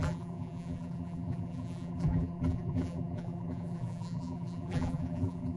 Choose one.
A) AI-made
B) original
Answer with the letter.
A